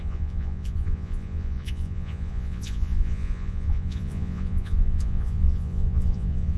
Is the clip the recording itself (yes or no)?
no